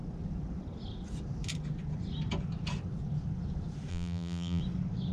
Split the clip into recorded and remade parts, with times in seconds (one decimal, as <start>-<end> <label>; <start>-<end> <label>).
0.0-3.9 recorded; 3.9-4.6 remade; 4.6-5.1 recorded

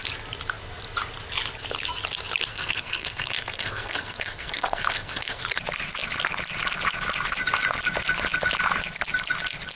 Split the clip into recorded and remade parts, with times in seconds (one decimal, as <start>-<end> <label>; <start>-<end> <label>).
0.0-2.5 recorded; 2.5-5.4 remade; 5.4-9.8 recorded

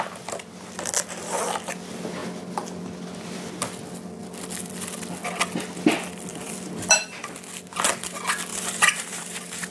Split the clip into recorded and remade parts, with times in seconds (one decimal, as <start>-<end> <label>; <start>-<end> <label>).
0.0-6.3 recorded; 6.3-7.2 remade; 7.2-8.5 recorded; 8.5-9.7 remade

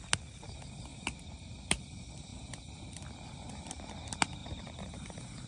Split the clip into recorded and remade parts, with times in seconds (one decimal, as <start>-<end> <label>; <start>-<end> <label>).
0.0-0.9 recorded; 0.9-1.9 remade; 1.9-4.4 recorded; 4.4-5.5 remade

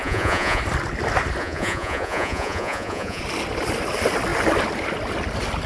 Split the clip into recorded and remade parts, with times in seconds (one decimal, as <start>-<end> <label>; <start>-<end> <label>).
0.0-0.6 remade; 0.6-1.4 recorded; 1.4-3.2 remade; 3.2-5.7 recorded

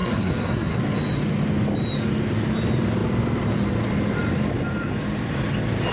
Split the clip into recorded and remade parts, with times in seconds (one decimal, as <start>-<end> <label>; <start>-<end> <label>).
0.0-0.8 remade; 0.8-5.9 recorded

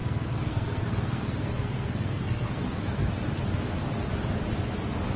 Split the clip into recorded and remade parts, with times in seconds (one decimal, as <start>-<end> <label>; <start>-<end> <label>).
0.0-3.1 remade; 3.1-5.2 recorded

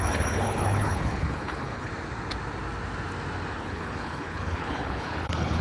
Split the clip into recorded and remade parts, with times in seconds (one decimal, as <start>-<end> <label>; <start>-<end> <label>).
0.0-1.9 remade; 1.9-3.6 recorded; 3.6-5.6 remade